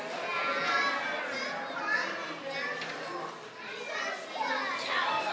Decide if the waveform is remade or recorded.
recorded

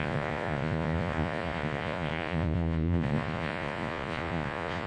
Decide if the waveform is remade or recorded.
remade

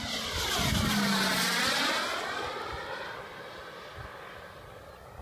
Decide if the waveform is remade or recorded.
recorded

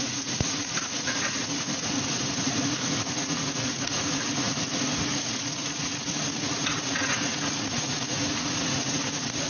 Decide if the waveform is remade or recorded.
remade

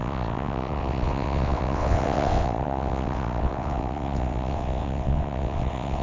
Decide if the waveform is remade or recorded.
remade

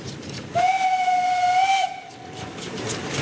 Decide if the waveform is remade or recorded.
recorded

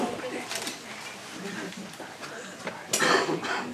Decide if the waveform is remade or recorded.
recorded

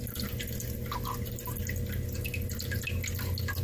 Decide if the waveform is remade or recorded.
recorded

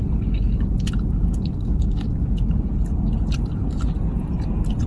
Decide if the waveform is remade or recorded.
recorded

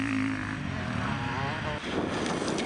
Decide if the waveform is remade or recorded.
recorded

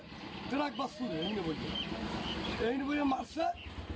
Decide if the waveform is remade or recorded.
recorded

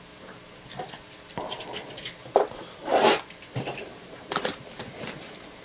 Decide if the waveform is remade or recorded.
remade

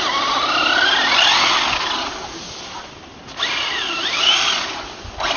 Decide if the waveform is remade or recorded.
recorded